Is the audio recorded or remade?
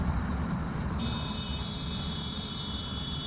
remade